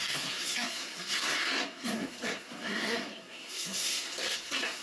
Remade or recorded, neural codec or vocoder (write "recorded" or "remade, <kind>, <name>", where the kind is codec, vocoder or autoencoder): remade, codec, SNAC